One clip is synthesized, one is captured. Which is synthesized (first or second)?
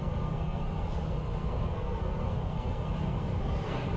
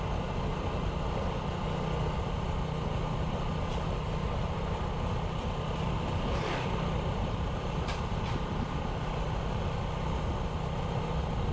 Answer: first